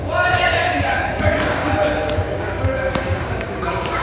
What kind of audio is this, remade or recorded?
remade